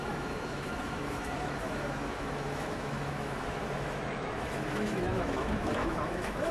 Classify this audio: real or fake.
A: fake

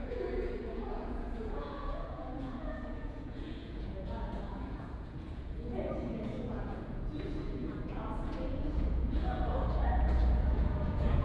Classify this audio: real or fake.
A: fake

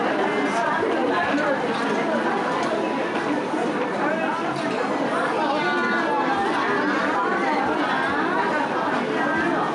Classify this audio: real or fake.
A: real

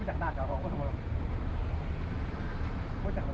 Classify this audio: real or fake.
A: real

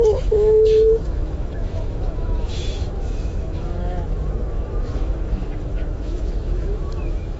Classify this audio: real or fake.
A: fake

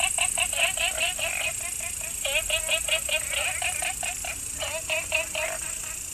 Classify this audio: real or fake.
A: real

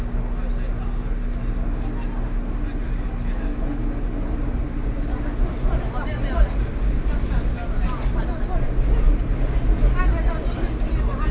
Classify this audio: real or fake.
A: real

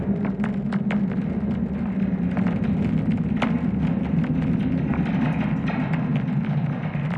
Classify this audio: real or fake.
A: real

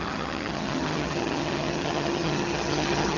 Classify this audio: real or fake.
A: fake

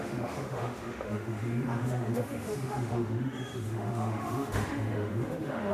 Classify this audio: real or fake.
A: fake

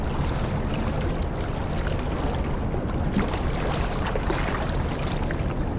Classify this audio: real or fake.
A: real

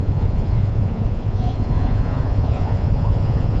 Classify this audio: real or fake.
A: fake